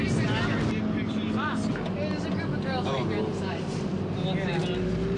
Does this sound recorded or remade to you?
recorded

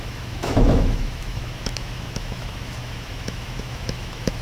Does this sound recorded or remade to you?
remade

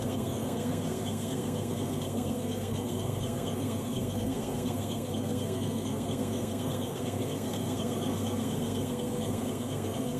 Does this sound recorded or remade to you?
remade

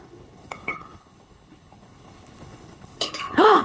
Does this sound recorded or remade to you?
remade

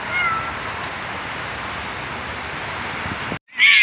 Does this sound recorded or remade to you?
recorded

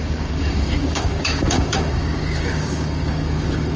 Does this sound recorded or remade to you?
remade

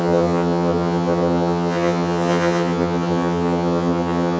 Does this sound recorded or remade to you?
remade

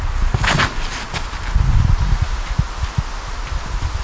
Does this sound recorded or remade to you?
recorded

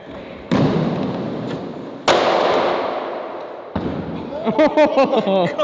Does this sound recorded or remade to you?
recorded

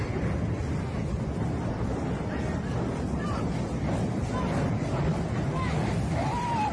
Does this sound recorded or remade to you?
remade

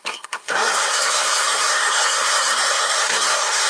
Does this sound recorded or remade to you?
remade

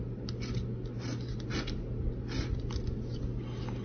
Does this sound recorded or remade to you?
recorded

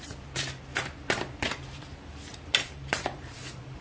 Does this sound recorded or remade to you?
remade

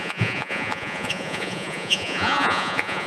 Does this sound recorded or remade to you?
remade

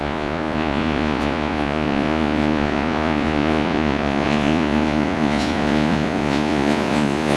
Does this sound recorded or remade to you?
remade